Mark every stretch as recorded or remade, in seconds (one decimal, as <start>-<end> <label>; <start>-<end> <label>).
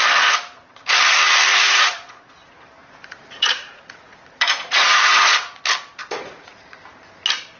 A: 0.0-1.5 recorded; 1.5-2.3 remade; 2.3-2.8 recorded; 2.8-5.6 remade; 5.6-6.0 recorded; 6.0-6.8 remade; 6.8-7.6 recorded